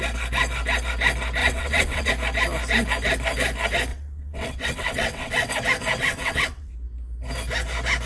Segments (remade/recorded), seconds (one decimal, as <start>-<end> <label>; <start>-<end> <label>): 0.0-1.4 recorded; 1.4-2.1 remade; 2.1-3.9 recorded; 3.9-5.5 remade; 5.5-6.0 recorded; 6.0-6.7 remade; 6.7-8.1 recorded